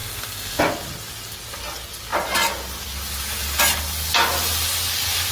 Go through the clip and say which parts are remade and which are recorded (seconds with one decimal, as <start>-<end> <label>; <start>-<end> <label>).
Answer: 0.0-0.6 remade; 0.6-5.3 recorded